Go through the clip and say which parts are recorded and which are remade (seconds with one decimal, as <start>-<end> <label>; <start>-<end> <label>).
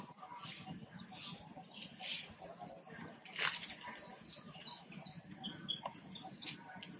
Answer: 0.0-7.0 recorded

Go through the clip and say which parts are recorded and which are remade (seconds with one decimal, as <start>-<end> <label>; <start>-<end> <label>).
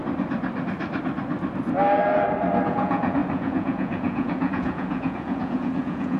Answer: 0.0-2.7 recorded; 2.7-6.2 remade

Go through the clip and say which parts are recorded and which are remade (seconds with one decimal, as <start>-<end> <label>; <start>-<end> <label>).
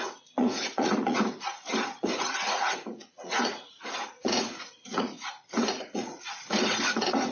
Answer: 0.0-7.3 remade